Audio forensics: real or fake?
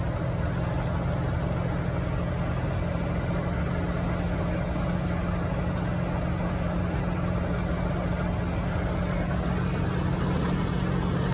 real